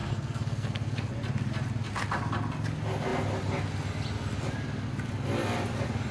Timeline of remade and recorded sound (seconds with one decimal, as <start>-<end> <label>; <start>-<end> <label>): 0.0-1.1 remade; 1.1-6.1 recorded